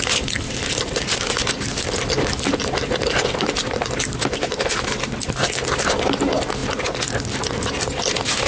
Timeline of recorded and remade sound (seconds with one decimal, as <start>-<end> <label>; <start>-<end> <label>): 0.0-8.5 recorded